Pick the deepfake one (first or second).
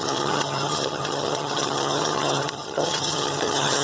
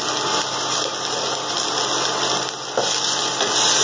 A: first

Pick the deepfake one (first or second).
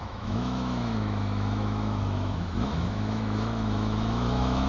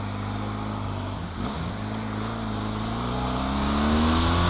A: first